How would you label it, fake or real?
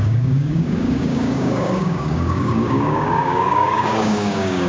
fake